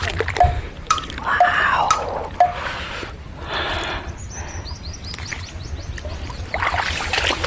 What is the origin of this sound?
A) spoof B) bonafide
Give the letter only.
B